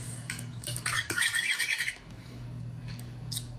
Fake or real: fake